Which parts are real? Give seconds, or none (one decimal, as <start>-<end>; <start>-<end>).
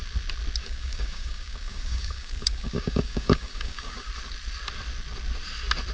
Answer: 0.0-0.6; 4.1-5.9